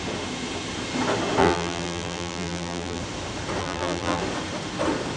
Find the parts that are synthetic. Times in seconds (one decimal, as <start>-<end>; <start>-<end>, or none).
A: 1.4-3.0; 3.6-4.2